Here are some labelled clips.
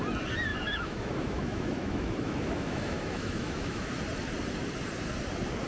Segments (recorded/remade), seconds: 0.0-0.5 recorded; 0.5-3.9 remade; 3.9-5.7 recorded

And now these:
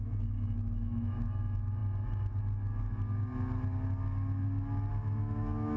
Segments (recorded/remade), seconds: 0.0-1.8 remade; 1.8-4.9 recorded; 4.9-5.8 remade

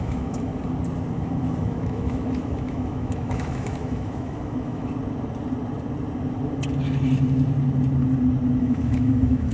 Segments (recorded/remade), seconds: 0.0-0.5 remade; 0.5-1.1 recorded; 1.1-4.9 remade; 4.9-8.6 recorded; 8.6-9.5 remade